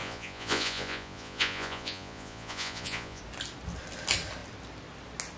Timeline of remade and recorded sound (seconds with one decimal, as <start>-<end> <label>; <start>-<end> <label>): 0.0-3.2 remade; 3.2-5.4 recorded